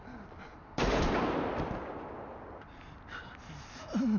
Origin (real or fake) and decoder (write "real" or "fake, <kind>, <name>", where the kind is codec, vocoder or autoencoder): real